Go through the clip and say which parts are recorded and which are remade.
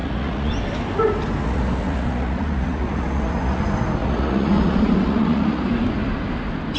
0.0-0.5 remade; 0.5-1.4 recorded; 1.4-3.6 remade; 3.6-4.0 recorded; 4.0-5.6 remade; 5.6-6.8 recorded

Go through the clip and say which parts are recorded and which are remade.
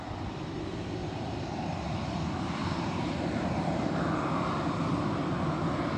0.0-1.0 recorded; 1.0-2.1 remade; 2.1-2.6 recorded; 2.6-4.1 remade; 4.1-6.0 recorded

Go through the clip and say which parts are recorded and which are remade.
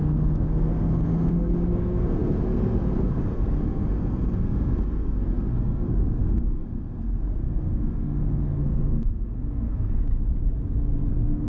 0.0-10.0 remade; 10.0-11.1 recorded; 11.1-11.5 remade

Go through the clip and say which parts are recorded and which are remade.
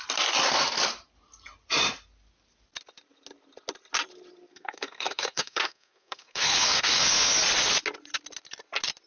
0.0-4.5 recorded; 4.5-7.3 remade; 7.3-9.1 recorded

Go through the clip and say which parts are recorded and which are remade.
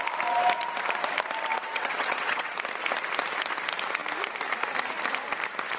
0.0-1.5 recorded; 1.5-2.6 remade; 2.6-5.8 recorded